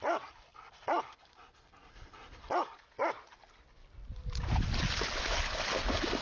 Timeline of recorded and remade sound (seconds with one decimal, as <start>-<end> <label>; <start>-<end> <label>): 0.0-0.5 recorded; 0.5-1.1 remade; 1.1-1.8 recorded; 1.8-2.7 remade; 2.7-3.8 recorded; 3.8-5.2 remade; 5.2-6.2 recorded